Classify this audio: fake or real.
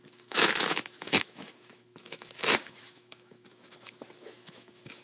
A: fake